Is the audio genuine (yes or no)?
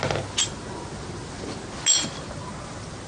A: yes